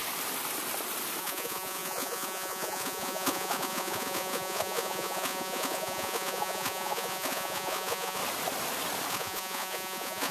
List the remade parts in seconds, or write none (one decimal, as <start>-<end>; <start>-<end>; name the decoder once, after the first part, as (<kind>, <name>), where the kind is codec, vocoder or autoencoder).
1.2-8.2 (vocoder, Vocos); 9.1-10.3